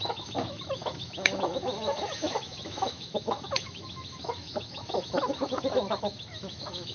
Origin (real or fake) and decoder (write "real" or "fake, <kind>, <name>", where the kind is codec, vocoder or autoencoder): fake, autoencoder, DAC-VAE